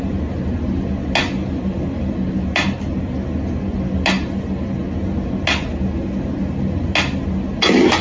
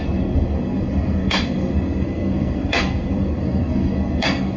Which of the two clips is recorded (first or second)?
first